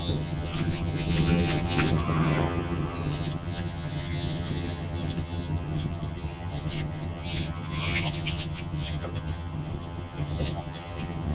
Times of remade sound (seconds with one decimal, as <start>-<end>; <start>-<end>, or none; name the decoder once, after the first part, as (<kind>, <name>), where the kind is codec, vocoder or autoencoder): 0.0-11.3 (vocoder, HiFi-GAN)